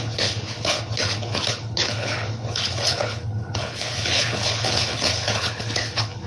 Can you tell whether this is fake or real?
fake